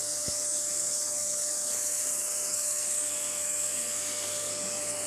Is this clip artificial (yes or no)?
yes